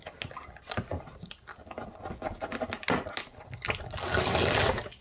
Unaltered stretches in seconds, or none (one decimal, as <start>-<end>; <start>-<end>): 0.0-5.0